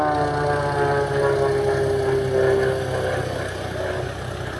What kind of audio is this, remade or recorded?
recorded